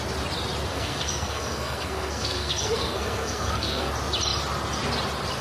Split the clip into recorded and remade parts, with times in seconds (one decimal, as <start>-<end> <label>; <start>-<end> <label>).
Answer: 0.0-0.7 recorded; 0.7-3.9 remade; 3.9-5.4 recorded